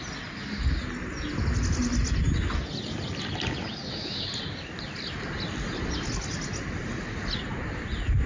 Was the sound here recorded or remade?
recorded